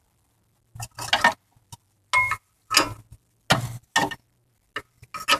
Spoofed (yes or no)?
no